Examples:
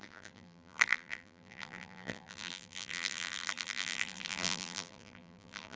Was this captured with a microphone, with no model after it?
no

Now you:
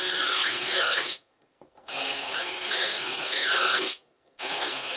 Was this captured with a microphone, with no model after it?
no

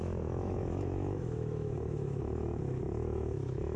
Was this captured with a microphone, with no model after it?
no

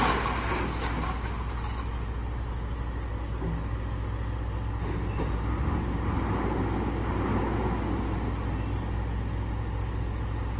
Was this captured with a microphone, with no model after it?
yes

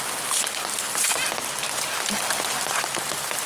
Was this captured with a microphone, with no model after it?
yes